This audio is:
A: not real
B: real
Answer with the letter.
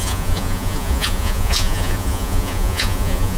A